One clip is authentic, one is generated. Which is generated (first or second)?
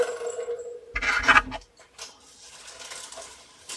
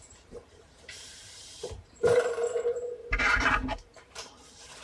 second